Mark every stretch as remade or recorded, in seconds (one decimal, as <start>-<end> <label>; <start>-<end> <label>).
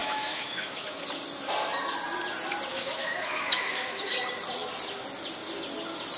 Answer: 0.0-1.0 remade; 1.0-2.7 recorded; 2.7-4.1 remade; 4.1-6.2 recorded